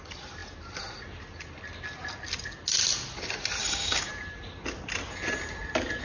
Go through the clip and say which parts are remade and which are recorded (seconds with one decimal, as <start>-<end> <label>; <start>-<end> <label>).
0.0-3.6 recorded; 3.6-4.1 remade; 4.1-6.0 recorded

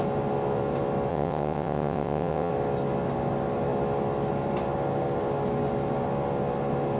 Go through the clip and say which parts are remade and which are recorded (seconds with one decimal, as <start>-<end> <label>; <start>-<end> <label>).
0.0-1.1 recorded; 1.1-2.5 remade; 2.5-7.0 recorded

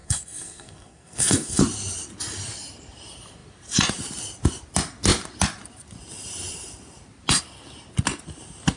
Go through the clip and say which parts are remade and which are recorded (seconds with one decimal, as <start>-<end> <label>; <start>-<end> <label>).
0.0-1.6 remade; 1.6-8.8 recorded

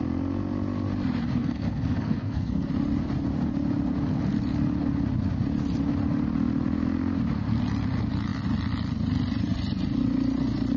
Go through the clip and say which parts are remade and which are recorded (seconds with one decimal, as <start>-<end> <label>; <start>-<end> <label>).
0.0-1.4 recorded; 1.4-2.7 remade; 2.7-10.8 recorded